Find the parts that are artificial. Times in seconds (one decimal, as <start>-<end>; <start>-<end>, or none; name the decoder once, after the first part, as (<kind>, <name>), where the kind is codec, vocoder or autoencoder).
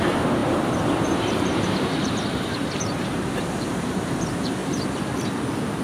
0.0-4.6 (vocoder, BigVGAN v2)